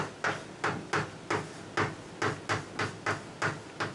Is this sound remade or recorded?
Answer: recorded